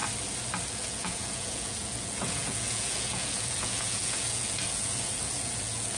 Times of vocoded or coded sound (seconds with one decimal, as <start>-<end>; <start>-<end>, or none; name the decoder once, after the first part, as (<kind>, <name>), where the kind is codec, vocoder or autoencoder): 0.7-6.0 (vocoder, Vocos)